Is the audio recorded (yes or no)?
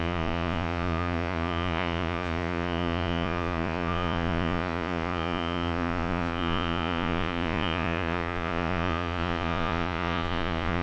no